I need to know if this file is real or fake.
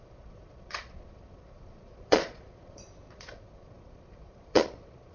fake